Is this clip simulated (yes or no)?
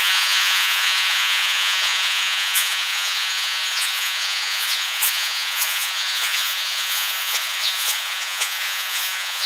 yes